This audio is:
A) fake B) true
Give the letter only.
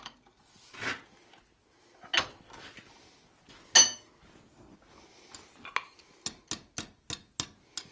B